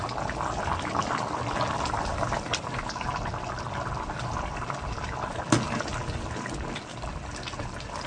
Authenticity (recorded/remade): recorded